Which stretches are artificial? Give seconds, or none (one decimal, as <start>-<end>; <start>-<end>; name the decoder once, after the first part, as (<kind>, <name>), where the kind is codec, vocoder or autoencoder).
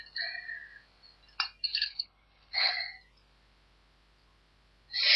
1.7-2.7 (codec, HILCodec)